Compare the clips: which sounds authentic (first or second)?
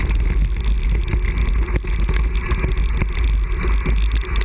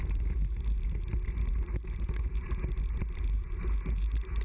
first